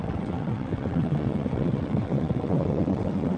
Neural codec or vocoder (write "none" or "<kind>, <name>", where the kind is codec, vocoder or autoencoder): vocoder, WaveNeXt